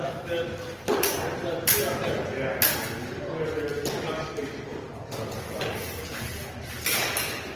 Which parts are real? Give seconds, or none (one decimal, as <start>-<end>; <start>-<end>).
0.0-7.6